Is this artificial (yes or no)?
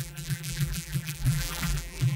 yes